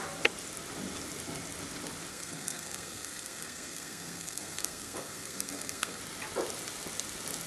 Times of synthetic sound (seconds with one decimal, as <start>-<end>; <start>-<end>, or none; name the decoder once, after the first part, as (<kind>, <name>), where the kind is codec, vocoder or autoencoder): 2.1-6.0 (codec, SNAC)